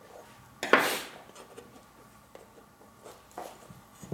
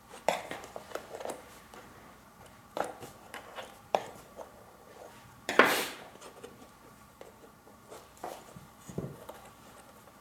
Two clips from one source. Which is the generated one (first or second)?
second